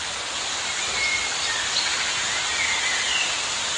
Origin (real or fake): real